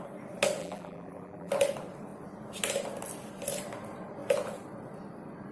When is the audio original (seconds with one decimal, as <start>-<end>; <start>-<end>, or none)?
0.0-0.6; 1.5-5.5

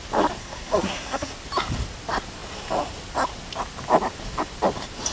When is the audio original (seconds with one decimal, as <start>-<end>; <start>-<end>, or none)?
0.0-0.4; 1.3-5.1

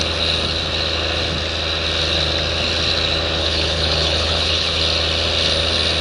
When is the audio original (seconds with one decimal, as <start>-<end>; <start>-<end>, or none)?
0.0-3.4; 4.8-6.0

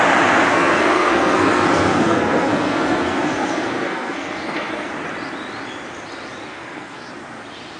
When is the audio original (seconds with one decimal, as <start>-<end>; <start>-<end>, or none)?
0.0-0.5; 4.9-6.5; 7.1-7.8

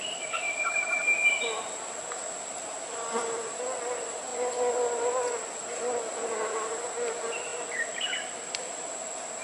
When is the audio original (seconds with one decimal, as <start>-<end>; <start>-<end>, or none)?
0.0-9.4

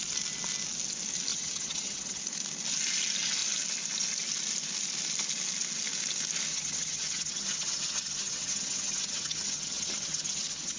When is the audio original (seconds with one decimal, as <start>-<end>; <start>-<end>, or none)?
0.0-1.3; 2.2-6.5